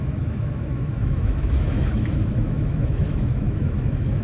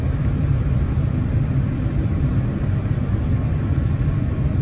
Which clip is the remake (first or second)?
first